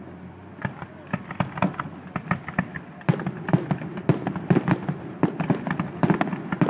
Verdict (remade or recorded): recorded